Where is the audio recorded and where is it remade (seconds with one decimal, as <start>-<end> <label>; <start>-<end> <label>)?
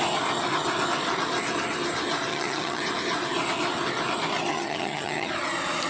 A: 0.0-2.3 recorded; 2.3-2.8 remade; 2.8-4.5 recorded; 4.5-5.3 remade; 5.3-5.9 recorded